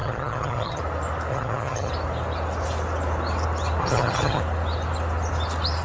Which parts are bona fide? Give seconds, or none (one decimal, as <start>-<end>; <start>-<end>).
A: 0.8-1.3; 1.9-3.8; 4.4-5.8